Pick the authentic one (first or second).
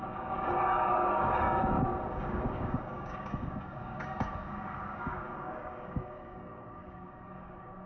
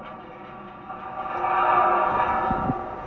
second